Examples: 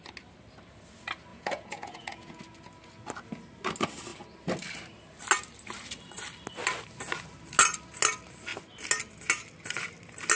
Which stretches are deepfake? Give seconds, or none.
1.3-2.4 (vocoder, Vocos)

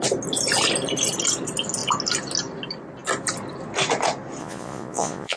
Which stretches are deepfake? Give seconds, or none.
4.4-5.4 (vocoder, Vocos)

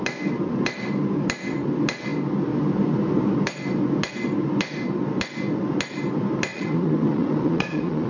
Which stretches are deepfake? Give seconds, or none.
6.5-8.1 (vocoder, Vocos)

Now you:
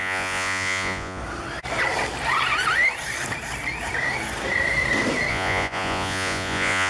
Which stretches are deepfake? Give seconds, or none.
0.0-1.2 (vocoder, Vocos); 5.3-6.9

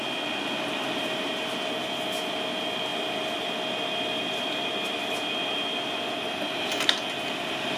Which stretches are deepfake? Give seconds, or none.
none

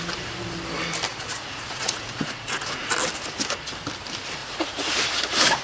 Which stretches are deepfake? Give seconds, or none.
1.1-2.9 (vocoder, Vocos); 4.4-4.9

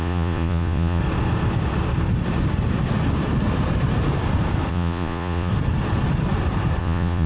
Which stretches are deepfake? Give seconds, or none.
0.0-1.0 (vocoder, Vocos); 4.7-5.5; 6.8-7.3

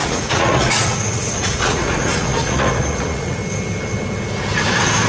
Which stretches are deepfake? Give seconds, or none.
0.0-3.4 (vocoder, Vocos)